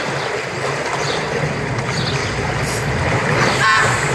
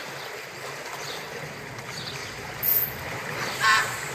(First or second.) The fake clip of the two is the second